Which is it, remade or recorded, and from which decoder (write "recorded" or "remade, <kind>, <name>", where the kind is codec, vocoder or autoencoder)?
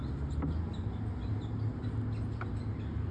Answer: recorded